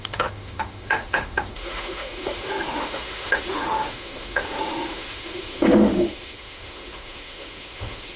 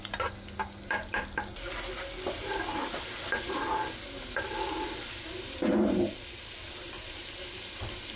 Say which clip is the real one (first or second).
second